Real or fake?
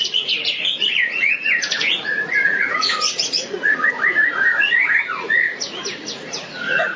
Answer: fake